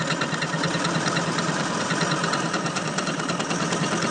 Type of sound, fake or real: fake